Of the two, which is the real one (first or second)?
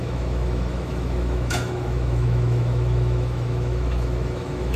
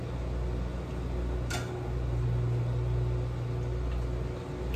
second